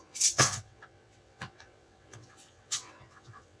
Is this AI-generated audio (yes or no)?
yes